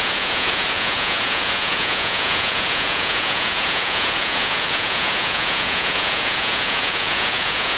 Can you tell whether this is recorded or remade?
remade